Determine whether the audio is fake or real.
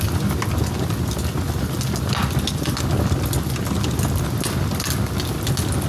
real